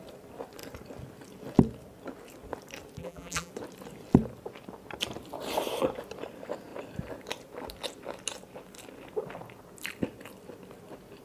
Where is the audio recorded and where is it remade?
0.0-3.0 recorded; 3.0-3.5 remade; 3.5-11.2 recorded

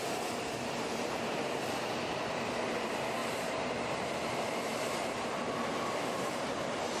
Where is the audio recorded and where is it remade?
0.0-1.2 remade; 1.2-3.2 recorded; 3.2-5.2 remade; 5.2-7.0 recorded

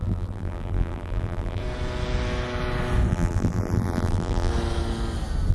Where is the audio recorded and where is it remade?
0.0-1.6 remade; 1.6-3.1 recorded; 3.1-4.5 remade; 4.5-5.5 recorded

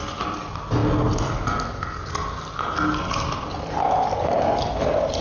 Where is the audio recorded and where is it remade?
0.0-5.2 recorded

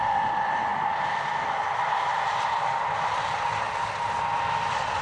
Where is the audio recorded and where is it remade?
0.0-0.7 remade; 0.7-3.7 recorded; 3.7-5.0 remade

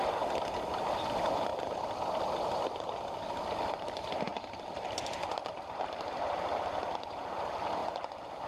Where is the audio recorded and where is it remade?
0.0-1.5 recorded; 1.5-3.0 remade; 3.0-4.3 recorded; 4.3-7.2 remade; 7.2-7.8 recorded; 7.8-8.5 remade

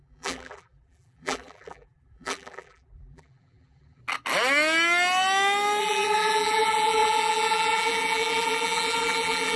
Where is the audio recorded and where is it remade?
0.0-4.0 remade; 4.0-5.8 recorded; 5.8-9.6 remade